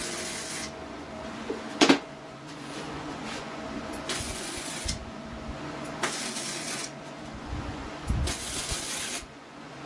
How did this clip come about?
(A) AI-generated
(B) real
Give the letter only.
A